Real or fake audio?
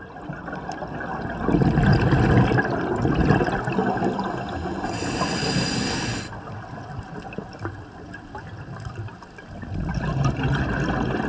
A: real